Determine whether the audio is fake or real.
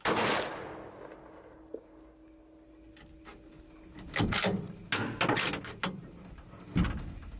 real